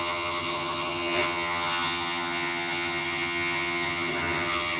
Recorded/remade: remade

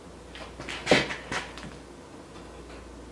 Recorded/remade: recorded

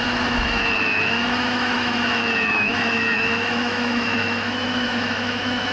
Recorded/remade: remade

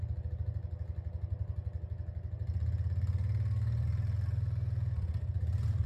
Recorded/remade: recorded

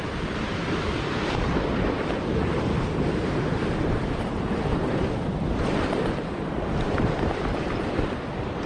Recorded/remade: remade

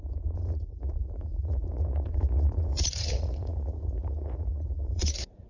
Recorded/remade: remade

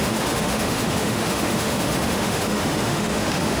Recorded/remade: remade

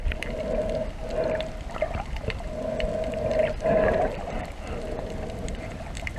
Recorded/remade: recorded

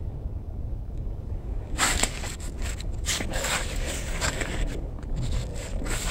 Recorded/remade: remade